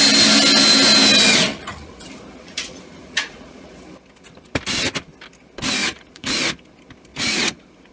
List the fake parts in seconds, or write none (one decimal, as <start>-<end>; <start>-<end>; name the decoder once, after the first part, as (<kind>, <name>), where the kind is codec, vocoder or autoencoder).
1.5-2.0 (vocoder, Vocos); 2.4-3.7; 5.8-6.4; 7.1-7.9

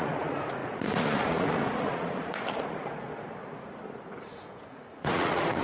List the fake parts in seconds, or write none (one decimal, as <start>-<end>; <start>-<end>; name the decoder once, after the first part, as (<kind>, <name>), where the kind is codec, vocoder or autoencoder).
0.0-3.1 (vocoder, Vocos); 4.2-5.6

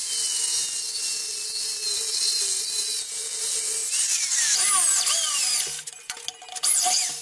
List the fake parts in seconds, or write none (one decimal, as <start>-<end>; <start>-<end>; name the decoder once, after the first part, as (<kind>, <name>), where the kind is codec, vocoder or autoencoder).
none

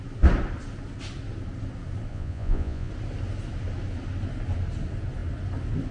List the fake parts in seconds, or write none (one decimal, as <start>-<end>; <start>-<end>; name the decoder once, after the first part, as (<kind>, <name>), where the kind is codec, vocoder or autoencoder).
2.1-2.9 (vocoder, Vocos)

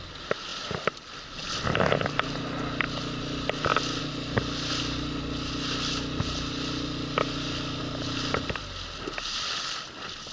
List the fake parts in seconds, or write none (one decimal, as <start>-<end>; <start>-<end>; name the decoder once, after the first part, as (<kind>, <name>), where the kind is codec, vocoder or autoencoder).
none

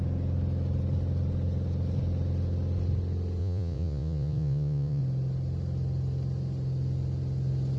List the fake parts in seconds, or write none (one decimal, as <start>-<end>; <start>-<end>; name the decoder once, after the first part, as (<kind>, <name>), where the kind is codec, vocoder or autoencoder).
3.4-5.0 (vocoder, Vocos)